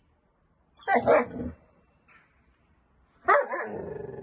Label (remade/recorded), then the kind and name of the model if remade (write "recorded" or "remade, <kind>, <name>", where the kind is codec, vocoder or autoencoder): recorded